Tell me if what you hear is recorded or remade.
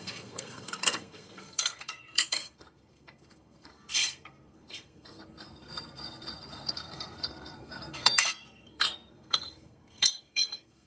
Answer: remade